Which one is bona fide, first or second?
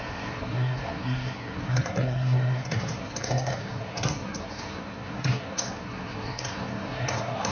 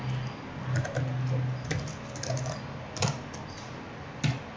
second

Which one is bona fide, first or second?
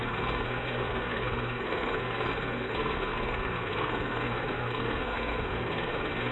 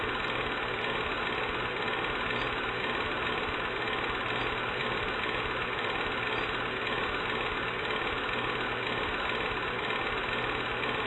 second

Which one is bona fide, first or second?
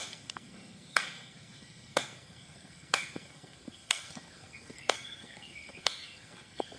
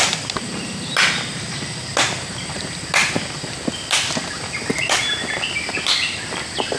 second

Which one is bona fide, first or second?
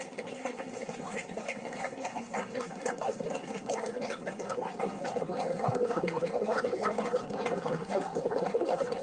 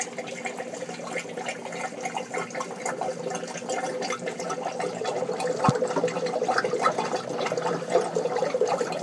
second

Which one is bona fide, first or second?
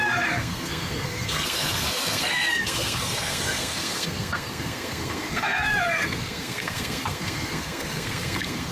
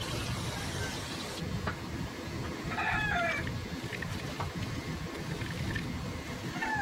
second